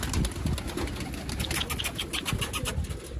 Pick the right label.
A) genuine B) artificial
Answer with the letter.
A